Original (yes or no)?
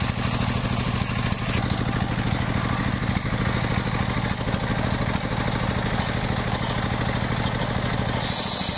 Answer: yes